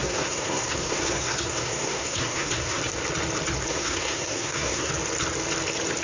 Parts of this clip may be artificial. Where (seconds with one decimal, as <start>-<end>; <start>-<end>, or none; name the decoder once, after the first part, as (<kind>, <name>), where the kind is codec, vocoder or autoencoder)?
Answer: 0.0-2.8 (codec, SNAC); 3.7-4.9